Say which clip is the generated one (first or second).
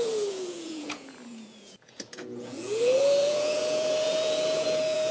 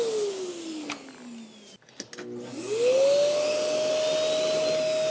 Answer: first